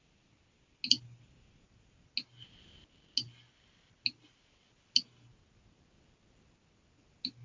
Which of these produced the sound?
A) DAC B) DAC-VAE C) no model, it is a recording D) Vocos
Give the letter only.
C